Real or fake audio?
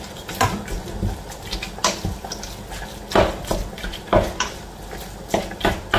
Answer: real